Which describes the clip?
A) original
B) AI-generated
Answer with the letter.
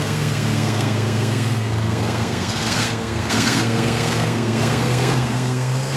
B